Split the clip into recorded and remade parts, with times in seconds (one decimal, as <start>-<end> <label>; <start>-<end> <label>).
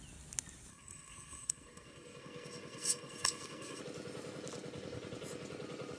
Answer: 0.0-0.7 recorded; 0.7-3.8 remade; 3.8-6.0 recorded